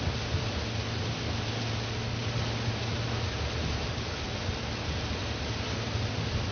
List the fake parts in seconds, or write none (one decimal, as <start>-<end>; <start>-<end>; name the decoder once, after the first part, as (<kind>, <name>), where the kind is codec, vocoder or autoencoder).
none